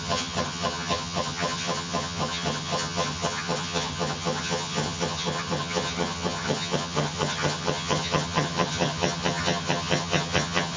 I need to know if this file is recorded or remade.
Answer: remade